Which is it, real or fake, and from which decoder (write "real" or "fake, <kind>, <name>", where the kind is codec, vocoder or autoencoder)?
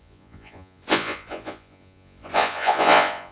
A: fake, vocoder, Vocos